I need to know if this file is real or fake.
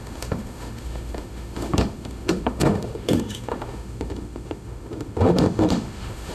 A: fake